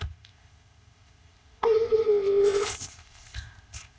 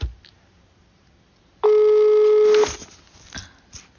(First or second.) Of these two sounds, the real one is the second